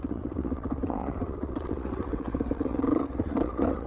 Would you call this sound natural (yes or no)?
no